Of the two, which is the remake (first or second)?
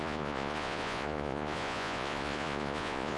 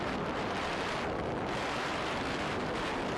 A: first